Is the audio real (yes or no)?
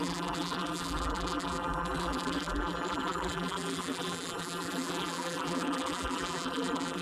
no